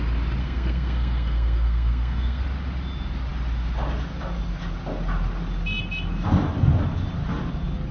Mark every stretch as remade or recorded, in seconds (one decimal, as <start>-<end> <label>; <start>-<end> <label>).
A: 0.0-0.4 recorded; 0.4-2.4 remade; 2.4-7.9 recorded

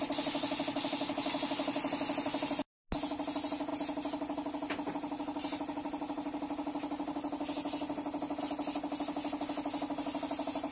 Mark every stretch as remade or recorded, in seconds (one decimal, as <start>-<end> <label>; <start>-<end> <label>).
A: 0.0-10.7 recorded

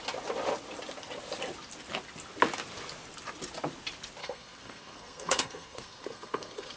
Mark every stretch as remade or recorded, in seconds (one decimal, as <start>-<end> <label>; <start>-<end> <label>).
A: 0.0-4.2 recorded; 4.2-6.8 remade